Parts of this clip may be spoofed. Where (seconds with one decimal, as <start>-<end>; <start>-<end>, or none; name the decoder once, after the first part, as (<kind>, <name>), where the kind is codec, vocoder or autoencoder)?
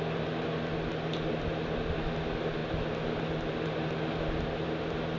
none